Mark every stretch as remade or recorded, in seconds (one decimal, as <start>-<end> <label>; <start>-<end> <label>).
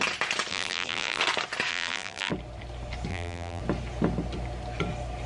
0.0-0.5 recorded; 0.5-1.2 remade; 1.2-1.7 recorded; 1.7-2.3 remade; 2.3-3.1 recorded; 3.1-3.6 remade; 3.6-5.3 recorded